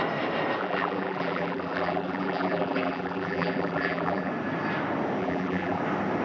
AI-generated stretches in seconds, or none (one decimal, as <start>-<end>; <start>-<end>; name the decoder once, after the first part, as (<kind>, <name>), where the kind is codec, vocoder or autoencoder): 0.6-4.3 (vocoder, BigVGAN v2); 5.2-5.8